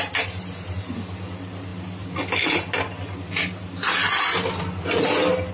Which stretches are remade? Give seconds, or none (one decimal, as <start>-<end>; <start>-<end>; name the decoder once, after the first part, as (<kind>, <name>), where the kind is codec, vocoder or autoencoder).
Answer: none